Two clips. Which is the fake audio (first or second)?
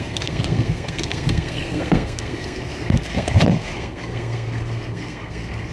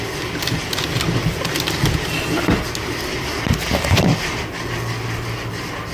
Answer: first